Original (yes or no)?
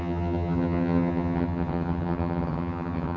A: no